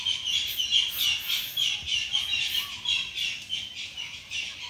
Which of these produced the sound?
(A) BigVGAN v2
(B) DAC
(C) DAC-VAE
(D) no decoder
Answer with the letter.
D